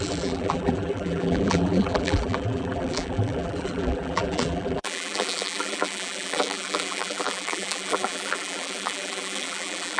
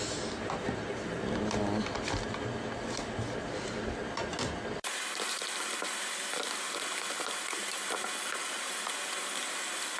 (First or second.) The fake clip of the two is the first